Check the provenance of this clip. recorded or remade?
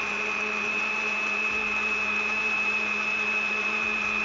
remade